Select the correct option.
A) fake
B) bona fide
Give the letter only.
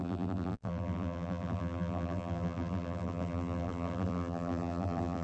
A